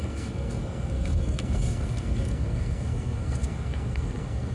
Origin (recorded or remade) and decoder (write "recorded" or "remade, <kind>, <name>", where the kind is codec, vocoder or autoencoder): remade, codec, SNAC